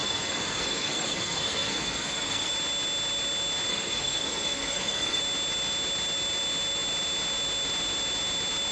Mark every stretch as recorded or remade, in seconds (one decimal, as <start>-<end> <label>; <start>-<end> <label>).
0.0-2.5 remade; 2.5-3.7 recorded; 3.7-5.2 remade; 5.2-8.7 recorded